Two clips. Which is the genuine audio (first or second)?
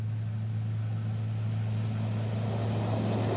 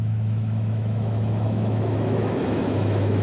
first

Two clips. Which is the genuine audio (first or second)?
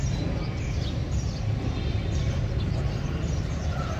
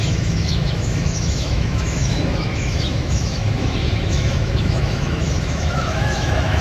first